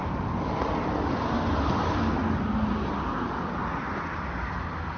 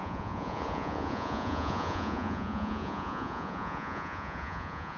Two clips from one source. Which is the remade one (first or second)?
second